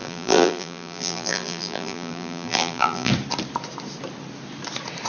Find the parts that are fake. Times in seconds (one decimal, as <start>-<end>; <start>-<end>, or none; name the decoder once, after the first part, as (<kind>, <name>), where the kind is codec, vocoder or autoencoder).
0.0-3.1 (vocoder, BigVGAN v2)